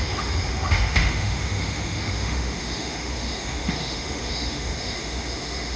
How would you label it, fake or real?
fake